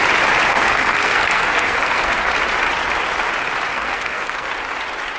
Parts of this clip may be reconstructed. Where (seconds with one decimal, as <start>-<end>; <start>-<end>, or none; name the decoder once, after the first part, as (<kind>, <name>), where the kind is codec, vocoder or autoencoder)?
0.5-2.3 (codec, SNAC); 3.7-4.5